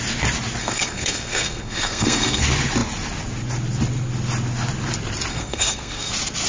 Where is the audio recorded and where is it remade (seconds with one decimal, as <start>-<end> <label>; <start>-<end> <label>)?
0.0-0.6 recorded; 0.6-2.4 remade; 2.4-5.3 recorded; 5.3-6.1 remade; 6.1-6.5 recorded